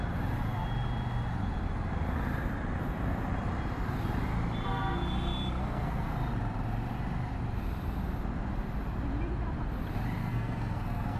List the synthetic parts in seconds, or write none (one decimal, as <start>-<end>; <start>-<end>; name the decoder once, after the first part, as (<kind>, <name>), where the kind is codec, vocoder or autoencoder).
5.6-6.1 (codec, SNAC); 10.2-11.2